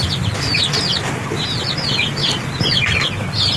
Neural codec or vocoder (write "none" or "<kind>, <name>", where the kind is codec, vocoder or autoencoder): none